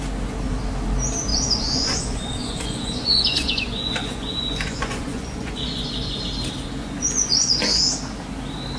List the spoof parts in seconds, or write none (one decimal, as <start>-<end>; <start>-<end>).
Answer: 1.3-6.2; 6.8-7.8